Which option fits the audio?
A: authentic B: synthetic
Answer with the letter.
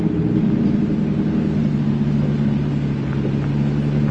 A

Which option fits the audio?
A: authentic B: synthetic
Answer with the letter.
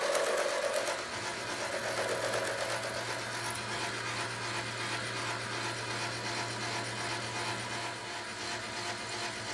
A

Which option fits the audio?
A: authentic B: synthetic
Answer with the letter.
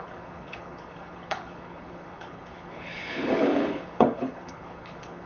B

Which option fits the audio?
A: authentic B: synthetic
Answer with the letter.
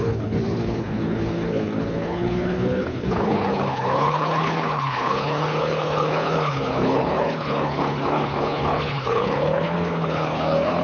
B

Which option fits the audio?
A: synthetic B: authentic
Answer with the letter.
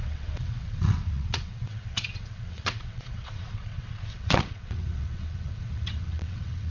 A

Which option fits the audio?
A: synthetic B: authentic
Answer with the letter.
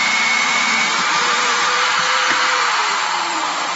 A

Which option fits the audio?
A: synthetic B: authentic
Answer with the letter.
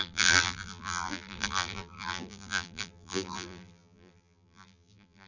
A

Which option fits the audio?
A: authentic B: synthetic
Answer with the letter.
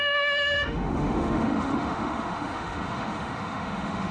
B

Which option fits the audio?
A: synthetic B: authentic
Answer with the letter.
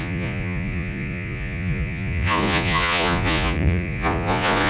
A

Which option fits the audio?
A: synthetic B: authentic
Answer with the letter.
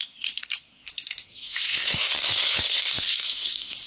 A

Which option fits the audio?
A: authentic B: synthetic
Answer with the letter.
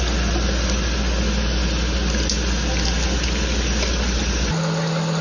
A